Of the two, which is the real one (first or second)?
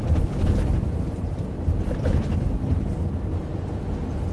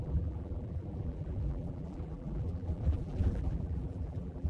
first